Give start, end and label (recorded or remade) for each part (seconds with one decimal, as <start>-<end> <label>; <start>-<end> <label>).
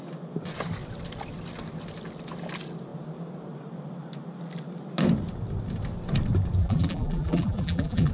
0.0-6.6 recorded; 6.6-8.1 remade